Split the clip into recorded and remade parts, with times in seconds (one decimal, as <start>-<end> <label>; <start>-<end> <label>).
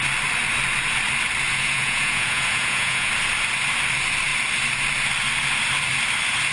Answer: 0.0-1.5 recorded; 1.5-3.1 remade; 3.1-6.5 recorded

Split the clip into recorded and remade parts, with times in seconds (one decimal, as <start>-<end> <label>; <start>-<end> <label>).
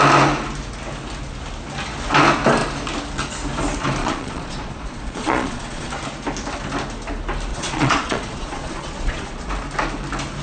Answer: 0.0-4.0 recorded; 4.0-5.9 remade; 5.9-7.5 recorded; 7.5-9.5 remade; 9.5-10.4 recorded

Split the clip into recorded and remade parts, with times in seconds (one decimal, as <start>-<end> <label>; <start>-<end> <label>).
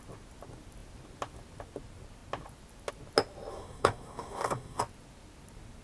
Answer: 0.0-3.5 recorded; 3.5-4.8 remade; 4.8-5.8 recorded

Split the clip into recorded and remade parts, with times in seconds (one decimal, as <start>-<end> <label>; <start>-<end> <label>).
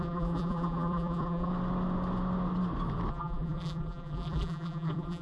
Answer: 0.0-1.5 remade; 1.5-3.1 recorded; 3.1-5.2 remade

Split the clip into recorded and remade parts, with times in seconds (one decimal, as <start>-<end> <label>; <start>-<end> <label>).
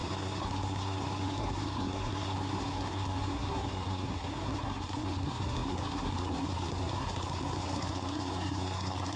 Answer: 0.0-9.2 remade